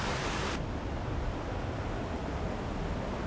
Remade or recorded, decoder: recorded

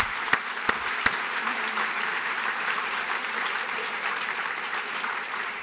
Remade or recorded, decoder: remade, vocoder, BigVGAN v2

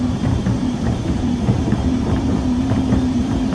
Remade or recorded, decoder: remade, vocoder, BigVGAN v2